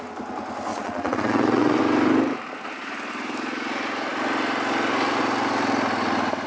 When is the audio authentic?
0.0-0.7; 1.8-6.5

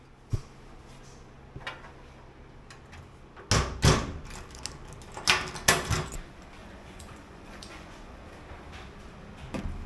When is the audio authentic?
0.0-6.6; 8.2-9.9

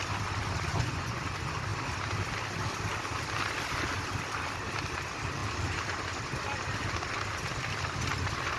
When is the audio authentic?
0.0-0.7; 1.2-8.6